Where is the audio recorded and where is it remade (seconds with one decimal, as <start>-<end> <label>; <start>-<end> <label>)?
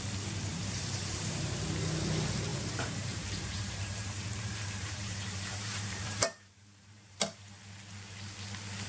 0.0-0.5 recorded; 0.5-1.6 remade; 1.6-2.5 recorded; 2.5-7.4 remade; 7.4-8.9 recorded